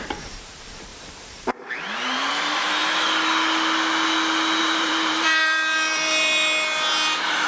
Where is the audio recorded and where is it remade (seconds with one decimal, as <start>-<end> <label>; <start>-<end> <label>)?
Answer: 0.0-2.8 remade; 2.8-4.6 recorded; 4.6-7.5 remade